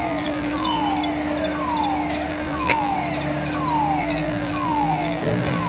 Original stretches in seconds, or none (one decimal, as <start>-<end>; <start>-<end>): 0.8-2.3; 2.9-4.0